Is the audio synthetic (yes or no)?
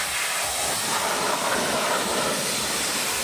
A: no